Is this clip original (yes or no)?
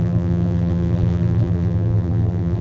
no